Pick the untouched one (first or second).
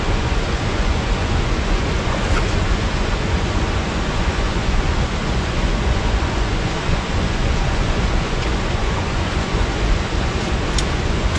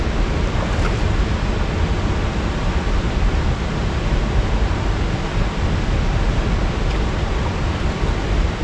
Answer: second